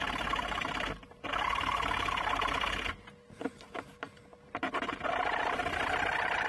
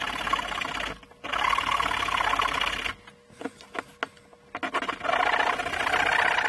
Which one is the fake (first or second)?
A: first